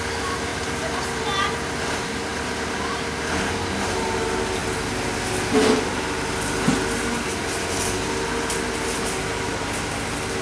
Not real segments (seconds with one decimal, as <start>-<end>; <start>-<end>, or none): none

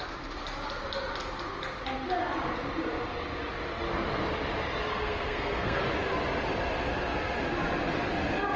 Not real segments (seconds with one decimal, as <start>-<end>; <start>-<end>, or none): 4.9-5.8

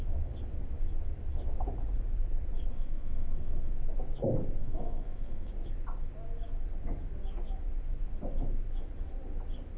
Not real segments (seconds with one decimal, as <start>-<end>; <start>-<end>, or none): 2.7-3.7; 4.6-5.5

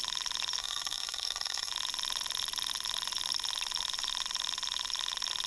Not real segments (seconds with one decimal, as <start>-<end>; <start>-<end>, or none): 0.6-1.7

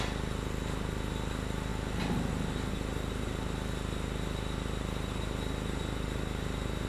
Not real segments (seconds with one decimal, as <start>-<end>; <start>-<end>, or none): none

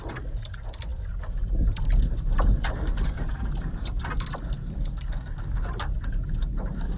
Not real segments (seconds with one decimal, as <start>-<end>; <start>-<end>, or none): none